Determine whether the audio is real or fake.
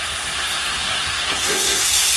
fake